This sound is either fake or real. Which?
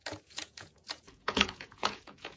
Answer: fake